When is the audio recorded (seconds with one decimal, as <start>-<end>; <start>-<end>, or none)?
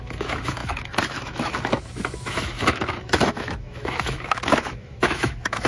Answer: none